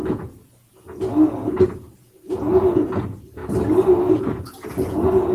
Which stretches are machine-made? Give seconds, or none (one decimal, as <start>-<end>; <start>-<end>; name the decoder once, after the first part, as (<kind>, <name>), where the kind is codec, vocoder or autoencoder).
0.0-1.1 (vocoder, Vocos); 1.6-3.4; 4.2-5.3